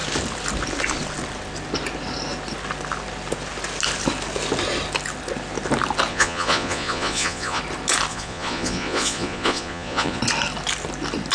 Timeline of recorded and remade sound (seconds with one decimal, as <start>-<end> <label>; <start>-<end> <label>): 0.0-6.1 recorded; 6.1-7.6 remade; 7.6-8.1 recorded; 8.1-10.2 remade; 10.2-11.3 recorded